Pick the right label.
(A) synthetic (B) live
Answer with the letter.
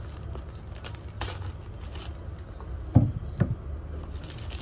B